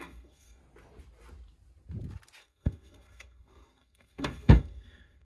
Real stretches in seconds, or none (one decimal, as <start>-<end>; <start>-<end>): 0.6-2.4